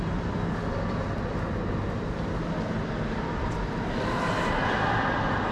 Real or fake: real